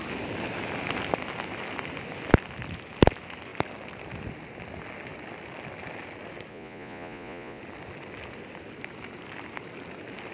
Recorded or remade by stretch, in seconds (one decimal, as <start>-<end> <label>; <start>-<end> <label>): 0.0-6.5 recorded; 6.5-7.6 remade; 7.6-10.3 recorded